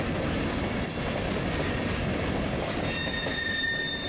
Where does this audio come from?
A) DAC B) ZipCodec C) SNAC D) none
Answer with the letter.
D